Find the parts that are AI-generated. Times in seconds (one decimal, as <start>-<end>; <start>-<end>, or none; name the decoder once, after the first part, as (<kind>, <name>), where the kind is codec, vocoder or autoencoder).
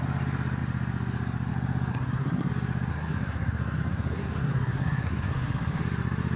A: 1.9-2.5 (codec, SNAC); 2.9-5.8